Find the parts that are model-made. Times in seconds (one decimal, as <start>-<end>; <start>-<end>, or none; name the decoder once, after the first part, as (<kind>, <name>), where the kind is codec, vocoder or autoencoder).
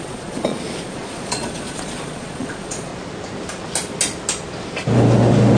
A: 0.0-2.9 (vocoder, Vocos)